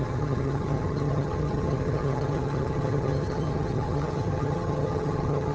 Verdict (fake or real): fake